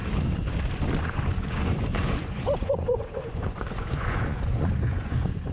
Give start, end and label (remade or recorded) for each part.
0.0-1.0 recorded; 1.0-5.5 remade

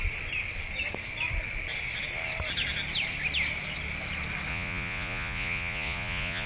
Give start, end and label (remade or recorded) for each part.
0.0-4.5 recorded; 4.5-6.5 remade

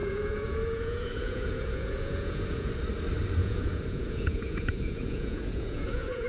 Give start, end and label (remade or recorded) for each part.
0.0-2.7 remade; 2.7-3.4 recorded; 3.4-6.3 remade

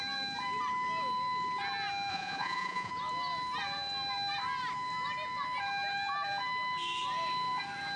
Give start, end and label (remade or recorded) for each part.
0.0-2.1 recorded; 2.1-2.9 remade; 2.9-8.0 recorded